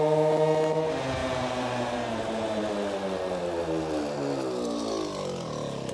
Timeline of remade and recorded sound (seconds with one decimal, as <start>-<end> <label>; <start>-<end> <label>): 0.0-1.2 recorded; 1.2-2.7 remade; 2.7-5.9 recorded